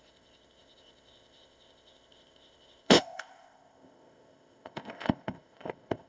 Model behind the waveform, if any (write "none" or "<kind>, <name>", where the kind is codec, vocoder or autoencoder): codec, ZipCodec